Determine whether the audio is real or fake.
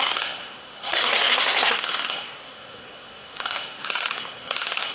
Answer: fake